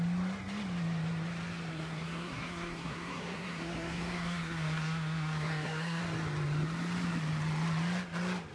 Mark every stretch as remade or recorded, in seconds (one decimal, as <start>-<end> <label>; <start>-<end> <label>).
0.0-1.7 recorded; 1.7-6.0 remade; 6.0-8.5 recorded